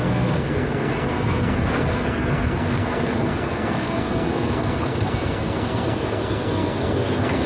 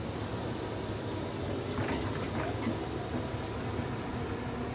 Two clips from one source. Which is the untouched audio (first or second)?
second